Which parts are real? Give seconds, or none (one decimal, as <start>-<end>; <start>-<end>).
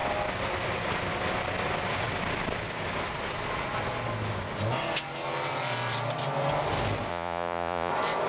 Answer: 0.0-7.1; 7.9-8.3